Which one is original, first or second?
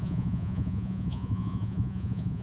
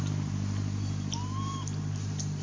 second